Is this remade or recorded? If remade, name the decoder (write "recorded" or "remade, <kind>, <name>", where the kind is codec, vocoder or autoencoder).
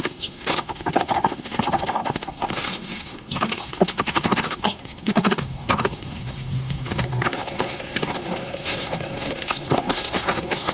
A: remade, codec, SNAC